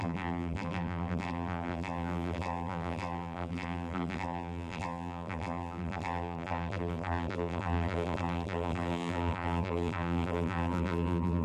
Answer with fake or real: fake